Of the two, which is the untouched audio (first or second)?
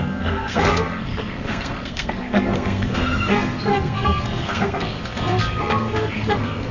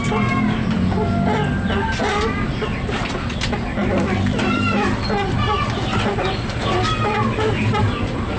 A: second